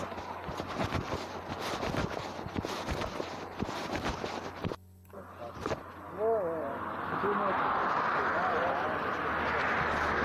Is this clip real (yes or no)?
yes